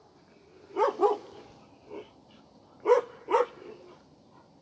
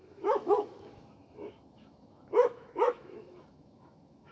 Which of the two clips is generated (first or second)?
second